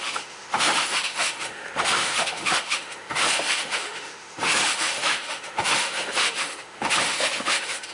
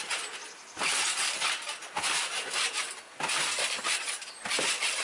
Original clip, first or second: second